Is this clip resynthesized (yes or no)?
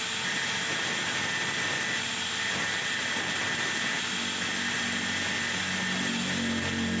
no